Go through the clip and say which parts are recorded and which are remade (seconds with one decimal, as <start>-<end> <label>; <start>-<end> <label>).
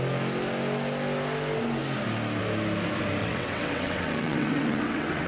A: 0.0-3.2 recorded; 3.2-5.3 remade